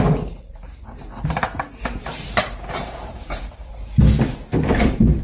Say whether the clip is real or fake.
fake